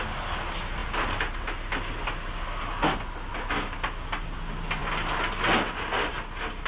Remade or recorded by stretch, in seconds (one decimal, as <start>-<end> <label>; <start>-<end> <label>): 0.0-6.7 recorded